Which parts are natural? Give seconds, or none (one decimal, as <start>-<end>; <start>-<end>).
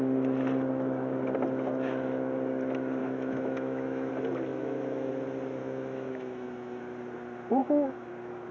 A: 0.0-3.0; 4.1-4.5; 5.1-5.6; 6.8-7.6; 8.1-8.5